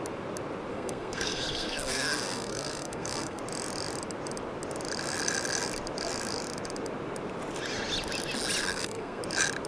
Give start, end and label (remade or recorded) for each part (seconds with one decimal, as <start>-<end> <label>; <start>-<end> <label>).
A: 0.0-0.7 recorded; 0.7-3.4 remade; 3.4-8.6 recorded; 8.6-9.2 remade; 9.2-9.7 recorded

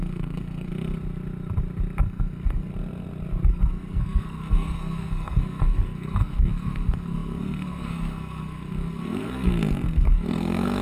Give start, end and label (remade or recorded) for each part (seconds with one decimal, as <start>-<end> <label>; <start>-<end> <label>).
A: 0.0-0.7 remade; 0.7-2.0 recorded; 2.0-2.7 remade; 2.7-3.5 recorded; 3.5-10.8 remade

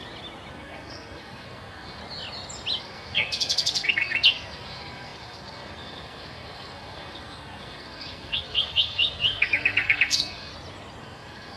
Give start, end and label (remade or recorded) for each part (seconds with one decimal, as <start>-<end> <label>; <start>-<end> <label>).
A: 0.0-0.5 recorded; 0.5-2.0 remade; 2.0-2.8 recorded; 2.8-10.5 remade; 10.5-11.0 recorded; 11.0-11.6 remade

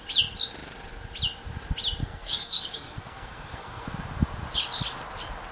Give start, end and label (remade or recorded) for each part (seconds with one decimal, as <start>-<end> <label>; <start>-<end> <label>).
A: 0.0-2.0 recorded; 2.0-3.9 remade; 3.9-5.5 recorded

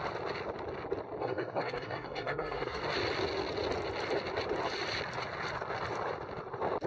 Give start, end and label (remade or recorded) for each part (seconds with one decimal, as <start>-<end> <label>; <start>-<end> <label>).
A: 0.0-1.2 recorded; 1.2-2.8 remade; 2.8-6.9 recorded

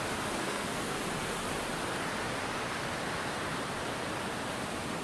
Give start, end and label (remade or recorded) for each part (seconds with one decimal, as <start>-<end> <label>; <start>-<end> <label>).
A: 0.0-0.4 recorded; 0.4-1.0 remade; 1.0-5.0 recorded